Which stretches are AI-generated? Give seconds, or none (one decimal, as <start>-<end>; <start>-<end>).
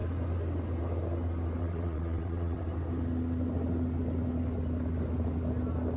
1.6-2.6